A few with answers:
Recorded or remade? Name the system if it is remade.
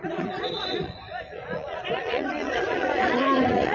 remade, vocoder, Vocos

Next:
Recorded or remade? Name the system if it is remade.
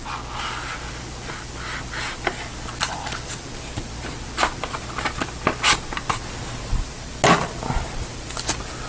recorded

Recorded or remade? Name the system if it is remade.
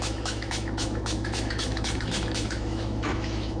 remade, autoencoder, DAC-VAE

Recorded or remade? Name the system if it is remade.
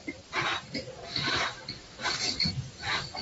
remade, vocoder, BigVGAN v2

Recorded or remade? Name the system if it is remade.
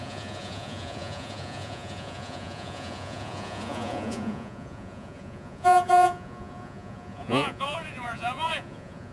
remade, vocoder, Vocos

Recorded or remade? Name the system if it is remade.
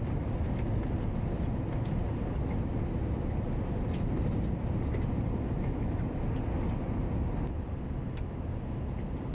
recorded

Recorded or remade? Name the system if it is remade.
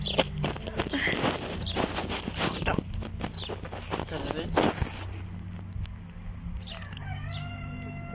recorded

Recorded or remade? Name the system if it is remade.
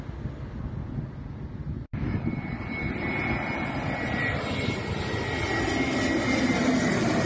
recorded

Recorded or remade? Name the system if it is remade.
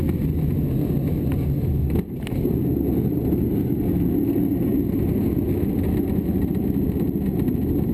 recorded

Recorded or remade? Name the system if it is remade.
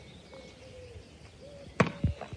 recorded